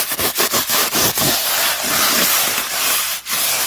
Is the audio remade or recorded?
remade